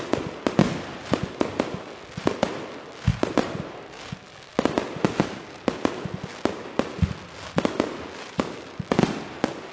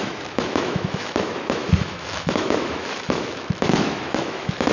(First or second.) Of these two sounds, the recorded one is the first